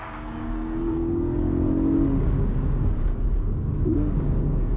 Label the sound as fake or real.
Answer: fake